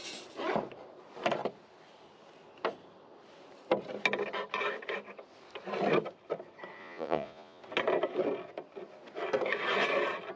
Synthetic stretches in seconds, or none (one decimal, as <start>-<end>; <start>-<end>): 6.8-7.6

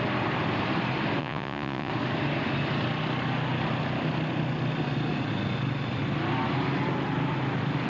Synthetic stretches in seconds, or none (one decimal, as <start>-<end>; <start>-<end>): 1.2-1.9

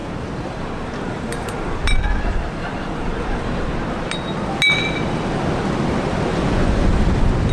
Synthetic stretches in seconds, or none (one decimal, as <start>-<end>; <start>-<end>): 6.3-6.9

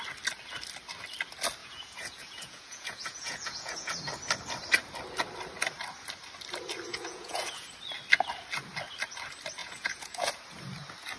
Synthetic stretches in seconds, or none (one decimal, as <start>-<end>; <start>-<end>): 1.6-3.9; 6.9-7.7; 9.6-10.3

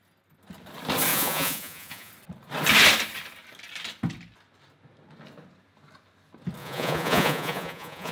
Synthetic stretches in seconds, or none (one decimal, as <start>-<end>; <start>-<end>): 1.1-2.1; 6.6-8.1

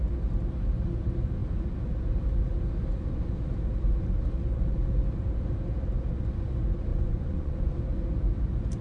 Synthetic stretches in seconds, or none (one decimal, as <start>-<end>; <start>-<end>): 6.9-7.8

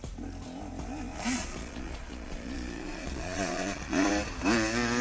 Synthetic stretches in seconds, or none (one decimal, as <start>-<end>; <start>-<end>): 1.1-4.1

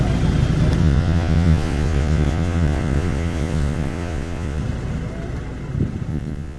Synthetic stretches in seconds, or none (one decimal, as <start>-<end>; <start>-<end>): 0.8-4.6; 6.1-6.6